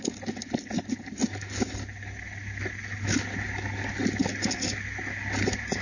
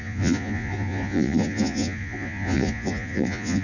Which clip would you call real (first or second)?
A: first